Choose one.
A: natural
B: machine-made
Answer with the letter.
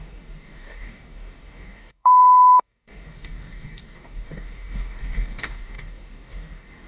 B